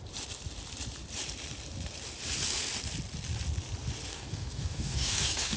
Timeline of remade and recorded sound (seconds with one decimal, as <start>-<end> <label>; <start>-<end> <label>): 0.0-4.1 recorded; 4.1-5.6 remade